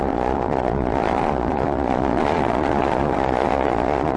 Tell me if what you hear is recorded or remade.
remade